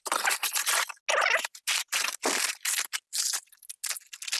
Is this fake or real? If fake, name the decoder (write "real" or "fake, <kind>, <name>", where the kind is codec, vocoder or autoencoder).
real